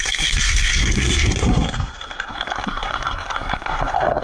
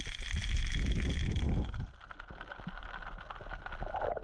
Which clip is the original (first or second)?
second